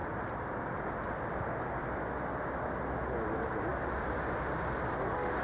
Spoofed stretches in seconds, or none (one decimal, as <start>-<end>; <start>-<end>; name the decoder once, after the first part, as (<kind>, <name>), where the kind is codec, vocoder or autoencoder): 0.0-1.0 (vocoder, BigVGAN v2); 3.7-4.2